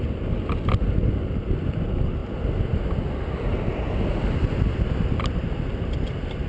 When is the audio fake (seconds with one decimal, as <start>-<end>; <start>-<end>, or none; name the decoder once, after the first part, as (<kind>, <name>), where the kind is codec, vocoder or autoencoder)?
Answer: none